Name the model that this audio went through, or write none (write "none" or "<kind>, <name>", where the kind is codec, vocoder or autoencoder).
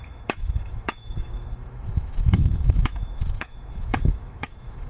autoencoder, DAC-VAE